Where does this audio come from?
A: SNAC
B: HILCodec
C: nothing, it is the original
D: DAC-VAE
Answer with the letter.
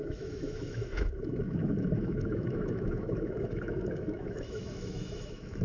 D